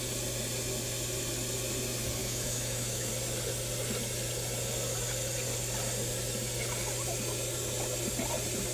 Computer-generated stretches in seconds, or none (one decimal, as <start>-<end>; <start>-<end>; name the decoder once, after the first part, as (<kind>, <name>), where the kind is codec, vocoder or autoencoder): 2.2-3.1 (autoencoder, DAC-VAE)